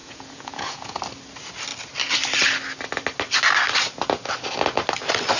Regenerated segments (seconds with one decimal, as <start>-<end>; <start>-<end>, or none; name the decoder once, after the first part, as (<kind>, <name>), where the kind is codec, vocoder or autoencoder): 0.0-1.0 (vocoder, Vocos)